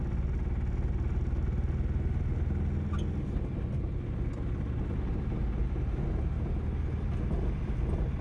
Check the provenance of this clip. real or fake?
real